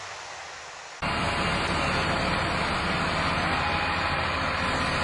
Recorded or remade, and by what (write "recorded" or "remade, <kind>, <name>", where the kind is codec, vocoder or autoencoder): recorded